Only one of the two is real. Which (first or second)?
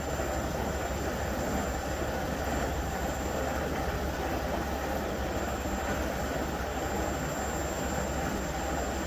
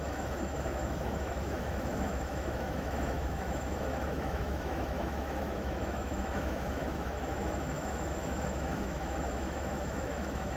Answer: first